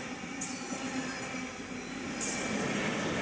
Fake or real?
real